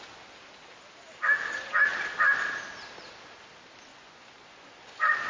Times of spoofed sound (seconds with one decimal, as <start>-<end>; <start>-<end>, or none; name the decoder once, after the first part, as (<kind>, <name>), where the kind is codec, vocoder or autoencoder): 3.9-5.3 (vocoder, Vocos)